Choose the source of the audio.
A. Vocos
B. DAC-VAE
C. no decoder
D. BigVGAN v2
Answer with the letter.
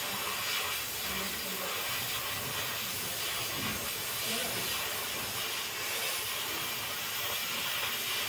C